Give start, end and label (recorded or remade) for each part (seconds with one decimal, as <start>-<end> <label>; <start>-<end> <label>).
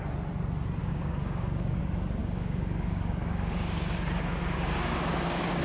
0.0-0.8 recorded; 0.8-1.8 remade; 1.8-2.2 recorded; 2.2-5.6 remade